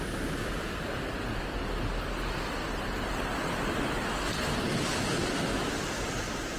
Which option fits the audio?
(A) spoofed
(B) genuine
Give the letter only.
B